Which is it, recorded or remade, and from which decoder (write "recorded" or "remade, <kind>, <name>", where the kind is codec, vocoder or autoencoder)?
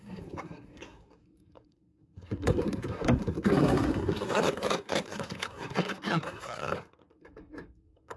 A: remade, codec, SNAC